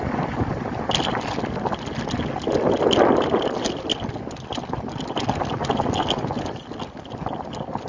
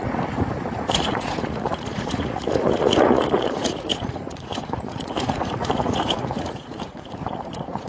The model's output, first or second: second